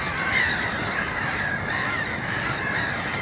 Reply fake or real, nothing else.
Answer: real